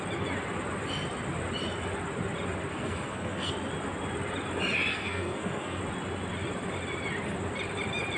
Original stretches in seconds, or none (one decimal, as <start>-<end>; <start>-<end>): 0.0-2.7; 3.5-4.9; 5.8-8.2